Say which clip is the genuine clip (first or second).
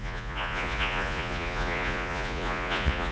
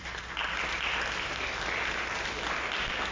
second